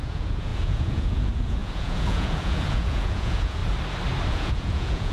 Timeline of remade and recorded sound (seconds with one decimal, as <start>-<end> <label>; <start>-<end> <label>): 0.0-3.6 remade; 3.6-4.3 recorded; 4.3-5.1 remade